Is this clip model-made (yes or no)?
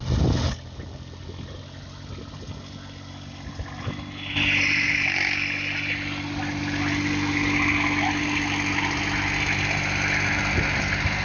no